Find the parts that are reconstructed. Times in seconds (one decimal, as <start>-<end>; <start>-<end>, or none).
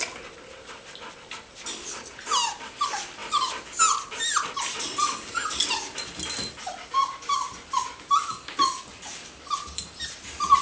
none